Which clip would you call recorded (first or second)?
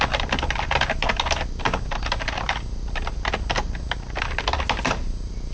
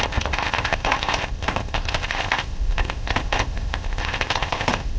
first